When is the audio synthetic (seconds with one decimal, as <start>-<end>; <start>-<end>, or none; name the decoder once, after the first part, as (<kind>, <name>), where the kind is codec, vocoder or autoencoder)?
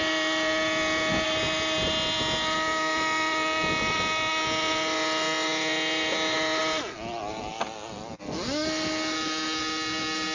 none